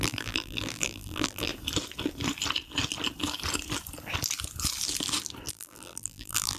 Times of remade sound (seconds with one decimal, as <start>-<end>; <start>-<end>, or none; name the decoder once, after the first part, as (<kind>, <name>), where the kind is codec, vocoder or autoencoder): 0.0-1.5 (vocoder, BigVGAN v2); 5.5-6.6